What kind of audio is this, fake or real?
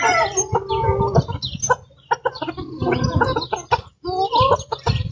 real